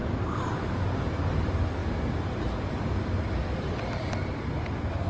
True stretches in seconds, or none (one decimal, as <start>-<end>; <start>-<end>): 0.0-1.0